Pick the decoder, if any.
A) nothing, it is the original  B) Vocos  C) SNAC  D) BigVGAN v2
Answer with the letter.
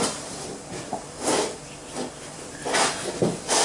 D